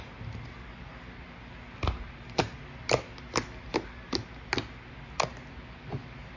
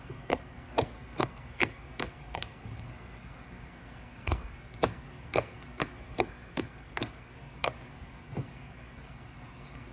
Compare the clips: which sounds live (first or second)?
first